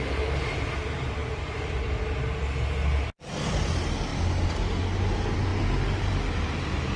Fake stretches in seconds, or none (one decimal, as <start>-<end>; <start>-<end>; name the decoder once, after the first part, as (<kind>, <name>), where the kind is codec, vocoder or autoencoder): none